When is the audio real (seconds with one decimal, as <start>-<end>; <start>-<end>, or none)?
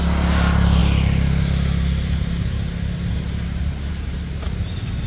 0.0-5.1